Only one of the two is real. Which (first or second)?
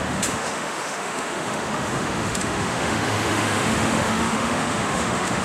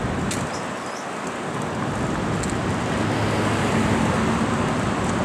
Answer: second